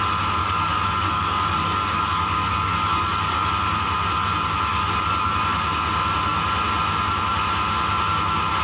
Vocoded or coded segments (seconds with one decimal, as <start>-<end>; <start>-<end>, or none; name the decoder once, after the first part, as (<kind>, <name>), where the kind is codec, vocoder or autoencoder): 0.4-3.5 (codec, DAC); 4.7-5.4